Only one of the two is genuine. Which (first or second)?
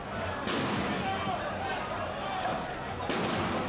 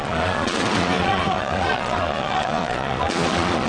first